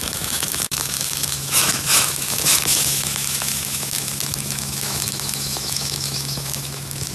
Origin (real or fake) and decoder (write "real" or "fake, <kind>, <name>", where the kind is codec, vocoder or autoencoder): fake, autoencoder, DAC-VAE